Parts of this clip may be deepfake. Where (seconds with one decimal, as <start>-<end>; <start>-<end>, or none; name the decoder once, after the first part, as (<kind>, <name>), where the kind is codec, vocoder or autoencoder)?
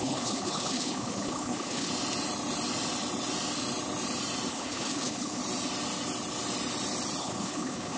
0.0-1.9 (codec, HILCodec); 4.5-5.4; 7.2-8.0